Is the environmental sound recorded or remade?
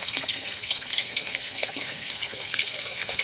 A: remade